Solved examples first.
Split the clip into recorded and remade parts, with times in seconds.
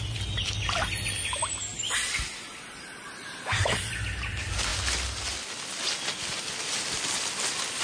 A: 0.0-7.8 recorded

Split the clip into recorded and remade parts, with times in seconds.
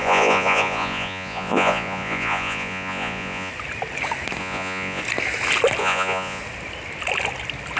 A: 0.0-3.5 remade; 3.5-4.4 recorded; 4.4-5.0 remade; 5.0-5.8 recorded; 5.8-6.4 remade; 6.4-7.8 recorded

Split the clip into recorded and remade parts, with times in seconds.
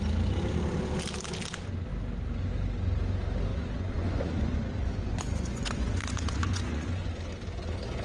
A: 0.0-3.5 recorded; 3.5-7.1 remade; 7.1-8.0 recorded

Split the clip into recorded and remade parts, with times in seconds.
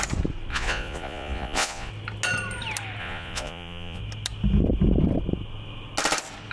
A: 0.0-0.5 recorded; 0.5-1.9 remade; 1.9-3.0 recorded; 3.0-4.0 remade; 4.0-6.5 recorded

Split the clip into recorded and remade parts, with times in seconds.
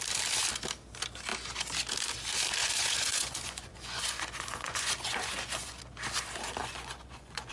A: 0.0-2.6 recorded; 2.6-5.8 remade; 5.8-6.6 recorded; 6.6-7.5 remade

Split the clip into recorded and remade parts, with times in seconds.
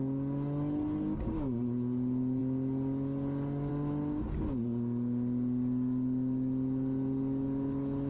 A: 0.0-8.1 recorded